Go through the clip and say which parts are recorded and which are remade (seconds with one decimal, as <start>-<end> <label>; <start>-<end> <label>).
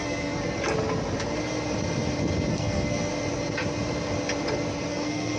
0.0-0.4 remade; 0.4-2.5 recorded; 2.5-3.1 remade; 3.1-4.9 recorded; 4.9-5.4 remade